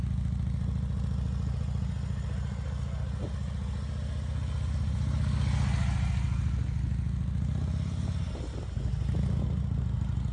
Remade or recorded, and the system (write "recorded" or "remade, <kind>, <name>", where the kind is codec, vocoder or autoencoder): recorded